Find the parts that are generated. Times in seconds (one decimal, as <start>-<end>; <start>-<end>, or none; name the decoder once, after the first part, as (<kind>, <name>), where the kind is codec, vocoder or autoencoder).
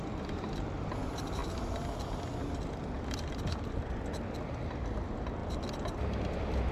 0.0-1.4 (vocoder, BigVGAN v2); 2.8-6.7